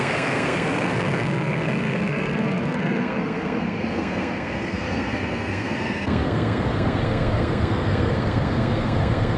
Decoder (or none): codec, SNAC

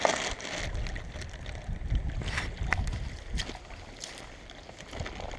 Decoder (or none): none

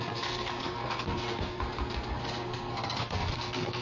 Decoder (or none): codec, SNAC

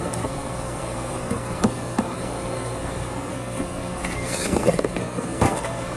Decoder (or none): codec, SNAC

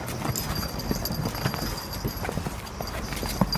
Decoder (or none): none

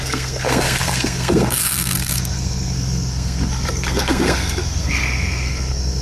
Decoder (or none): codec, SNAC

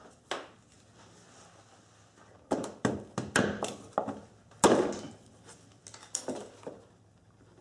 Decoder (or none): none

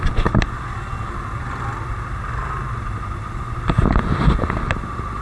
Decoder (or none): none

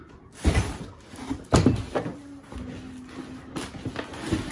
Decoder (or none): none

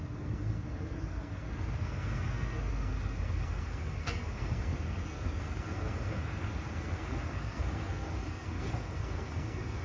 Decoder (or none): codec, SNAC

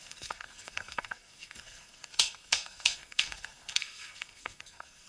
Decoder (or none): codec, SNAC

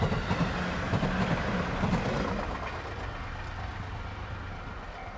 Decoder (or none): none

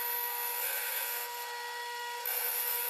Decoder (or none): codec, SNAC